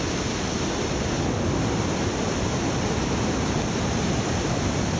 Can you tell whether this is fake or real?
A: real